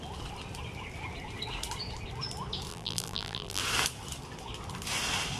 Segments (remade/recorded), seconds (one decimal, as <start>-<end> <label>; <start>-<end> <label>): 0.0-2.7 recorded; 2.7-3.6 remade; 3.6-5.4 recorded